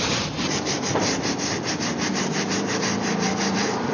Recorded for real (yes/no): no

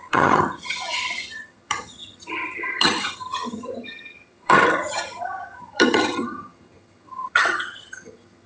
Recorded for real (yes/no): no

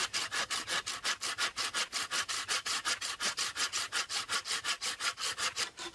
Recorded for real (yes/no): yes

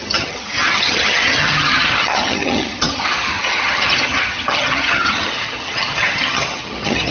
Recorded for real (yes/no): no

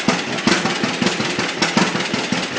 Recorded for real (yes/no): yes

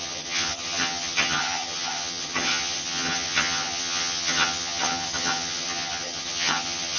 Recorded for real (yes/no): no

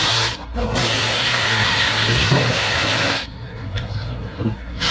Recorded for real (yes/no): no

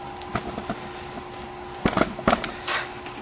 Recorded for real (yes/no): yes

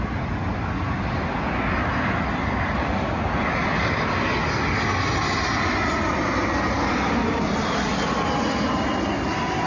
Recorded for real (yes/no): yes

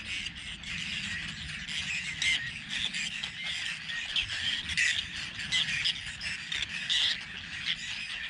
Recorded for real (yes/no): yes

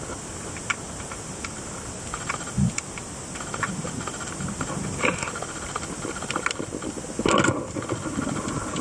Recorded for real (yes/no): yes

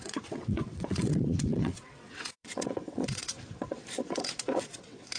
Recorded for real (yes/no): no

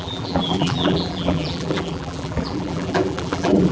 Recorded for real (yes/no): no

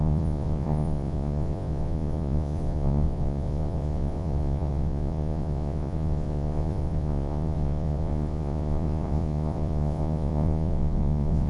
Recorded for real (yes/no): no